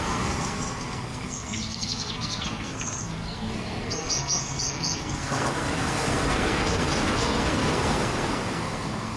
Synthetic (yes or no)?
yes